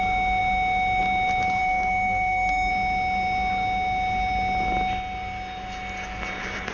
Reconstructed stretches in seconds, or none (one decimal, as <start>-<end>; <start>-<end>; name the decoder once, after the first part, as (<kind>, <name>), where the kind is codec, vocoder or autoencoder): 1.6-2.7 (codec, SNAC)